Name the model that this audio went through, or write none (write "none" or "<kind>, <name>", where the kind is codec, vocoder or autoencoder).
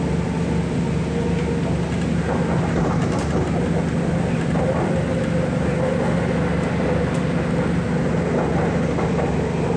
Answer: none